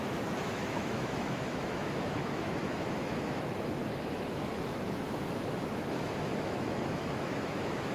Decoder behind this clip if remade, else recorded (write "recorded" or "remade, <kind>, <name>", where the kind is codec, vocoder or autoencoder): remade, autoencoder, DAC-VAE